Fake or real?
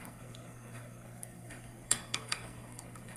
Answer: fake